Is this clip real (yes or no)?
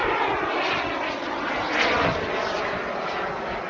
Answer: yes